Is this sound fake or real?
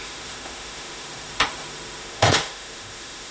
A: fake